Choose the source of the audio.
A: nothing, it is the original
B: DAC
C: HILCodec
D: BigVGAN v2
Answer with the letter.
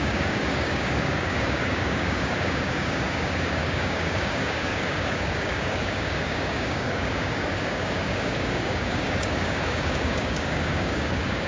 B